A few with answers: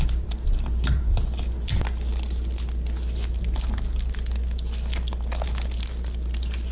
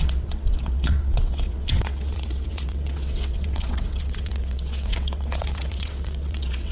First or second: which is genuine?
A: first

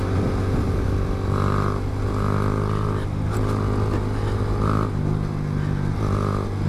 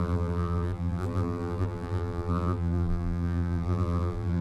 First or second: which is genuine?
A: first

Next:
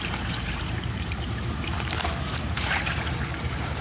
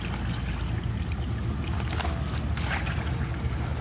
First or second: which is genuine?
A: second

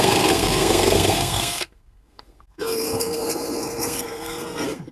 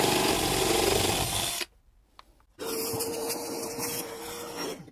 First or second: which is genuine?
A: second